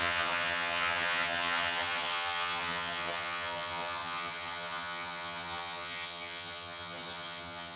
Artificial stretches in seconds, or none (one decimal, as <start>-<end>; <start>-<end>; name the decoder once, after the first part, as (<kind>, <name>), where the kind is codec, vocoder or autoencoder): 0.0-7.8 (vocoder, HiFi-GAN)